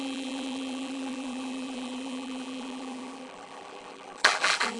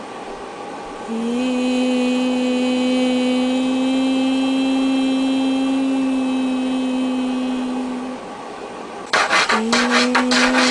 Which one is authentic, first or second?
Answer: second